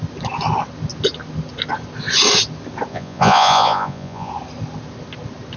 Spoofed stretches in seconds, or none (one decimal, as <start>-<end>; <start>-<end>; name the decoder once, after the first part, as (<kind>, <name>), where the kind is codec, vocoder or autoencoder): 2.9-4.3 (vocoder, Vocos)